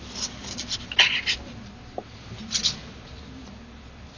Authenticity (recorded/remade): recorded